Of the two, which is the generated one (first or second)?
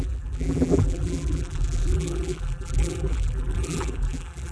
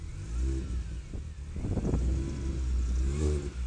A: first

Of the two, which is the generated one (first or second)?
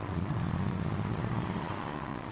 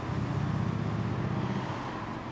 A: first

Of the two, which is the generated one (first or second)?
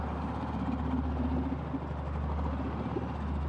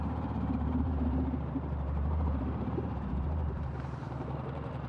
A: second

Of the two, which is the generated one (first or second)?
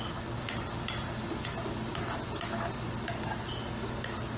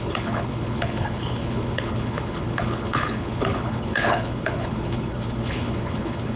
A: second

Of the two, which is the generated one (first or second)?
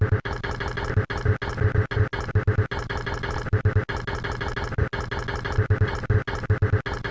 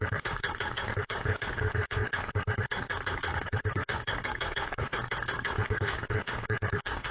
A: second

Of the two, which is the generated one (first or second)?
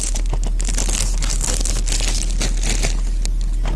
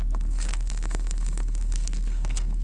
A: second